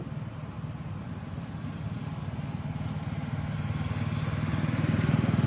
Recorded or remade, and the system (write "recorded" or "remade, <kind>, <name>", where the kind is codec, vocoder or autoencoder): recorded